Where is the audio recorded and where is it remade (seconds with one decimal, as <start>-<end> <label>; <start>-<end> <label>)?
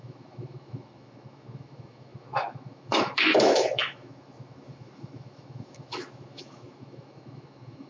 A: 0.0-7.9 remade